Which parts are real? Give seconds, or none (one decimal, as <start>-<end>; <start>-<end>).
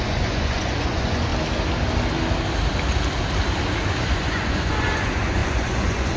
1.3-4.1